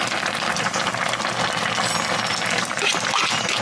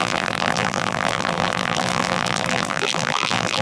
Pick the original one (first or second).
first